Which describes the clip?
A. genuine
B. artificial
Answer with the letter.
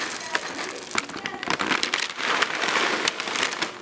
A